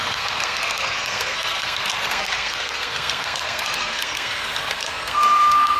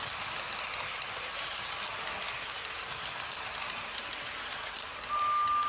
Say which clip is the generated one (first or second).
first